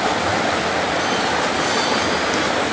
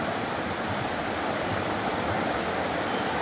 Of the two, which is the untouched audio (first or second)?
first